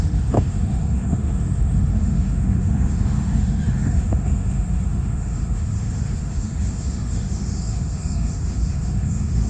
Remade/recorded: remade